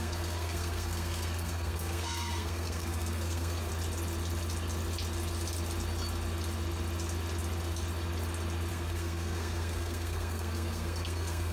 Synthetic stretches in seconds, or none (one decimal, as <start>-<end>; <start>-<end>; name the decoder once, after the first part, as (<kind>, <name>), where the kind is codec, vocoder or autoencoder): 0.0-3.7 (codec, SNAC); 8.7-11.5